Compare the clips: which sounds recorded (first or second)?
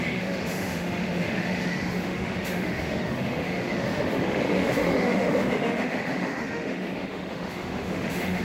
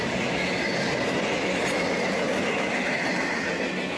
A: second